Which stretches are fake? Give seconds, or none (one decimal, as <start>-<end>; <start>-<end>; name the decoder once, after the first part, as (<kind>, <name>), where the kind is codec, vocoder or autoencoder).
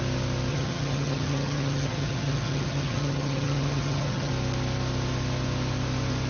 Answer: 0.5-4.3 (vocoder, HiFi-GAN)